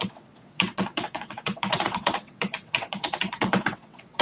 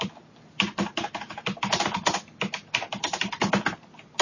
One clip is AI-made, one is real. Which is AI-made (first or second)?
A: first